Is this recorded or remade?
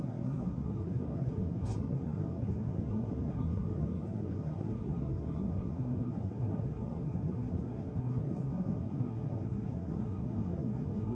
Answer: remade